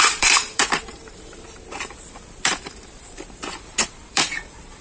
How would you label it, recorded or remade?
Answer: remade